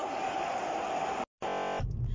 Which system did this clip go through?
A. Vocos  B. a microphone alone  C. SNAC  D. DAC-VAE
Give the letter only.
B